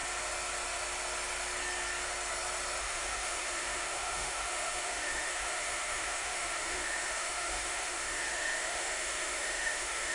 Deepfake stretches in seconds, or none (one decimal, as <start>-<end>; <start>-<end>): 2.8-10.1